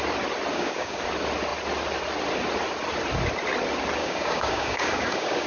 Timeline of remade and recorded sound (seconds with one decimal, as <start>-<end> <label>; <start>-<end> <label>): 0.0-0.5 recorded; 0.5-1.0 remade; 1.0-4.0 recorded; 4.0-5.5 remade